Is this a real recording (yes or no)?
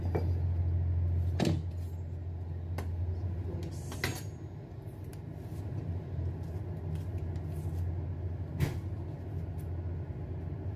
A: yes